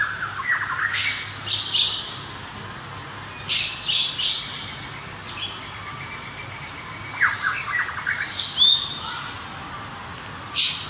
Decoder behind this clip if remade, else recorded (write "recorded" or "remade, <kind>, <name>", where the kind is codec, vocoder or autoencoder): recorded